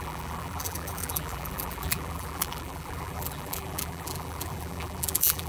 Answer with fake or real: fake